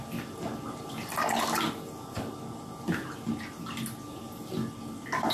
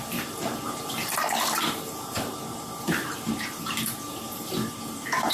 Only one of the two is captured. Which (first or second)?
first